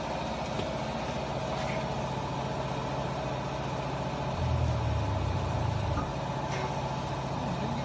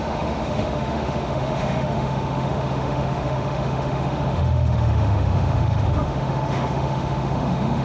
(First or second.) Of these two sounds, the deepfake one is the second